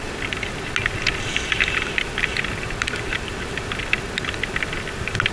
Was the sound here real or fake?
real